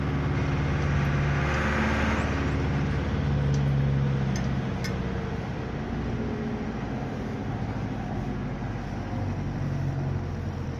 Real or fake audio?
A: real